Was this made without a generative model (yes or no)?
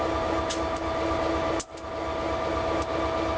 yes